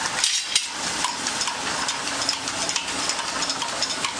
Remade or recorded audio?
recorded